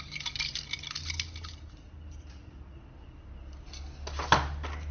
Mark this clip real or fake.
real